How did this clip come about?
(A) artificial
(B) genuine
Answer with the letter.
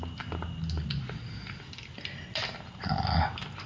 B